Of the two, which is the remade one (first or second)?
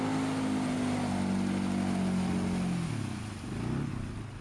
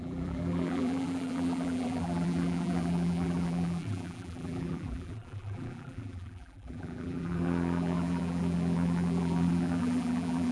second